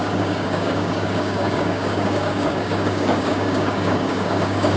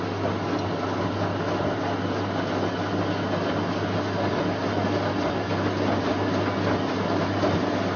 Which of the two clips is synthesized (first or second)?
first